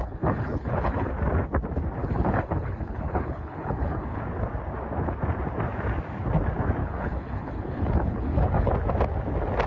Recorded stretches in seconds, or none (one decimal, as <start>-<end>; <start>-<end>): 1.1-2.0; 4.2-6.8; 8.7-9.7